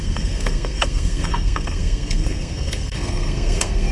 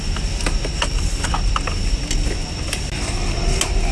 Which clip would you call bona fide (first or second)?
second